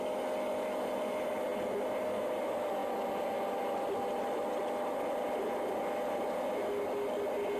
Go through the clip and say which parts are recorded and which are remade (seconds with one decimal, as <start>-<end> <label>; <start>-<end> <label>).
0.0-7.6 recorded